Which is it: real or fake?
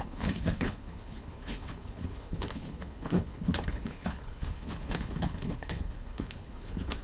fake